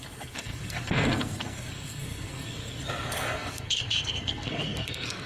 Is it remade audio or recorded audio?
remade